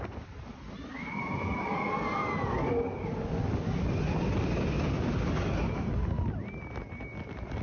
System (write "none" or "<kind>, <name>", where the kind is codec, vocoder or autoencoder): none